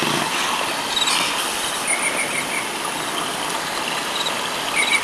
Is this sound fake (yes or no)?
no